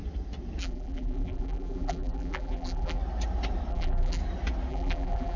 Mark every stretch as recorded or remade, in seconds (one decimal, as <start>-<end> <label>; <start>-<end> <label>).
0.0-0.6 recorded; 0.6-3.0 remade; 3.0-3.7 recorded; 3.7-4.2 remade; 4.2-4.7 recorded; 4.7-5.4 remade